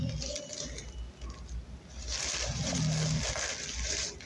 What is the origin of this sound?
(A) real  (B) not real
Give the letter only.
A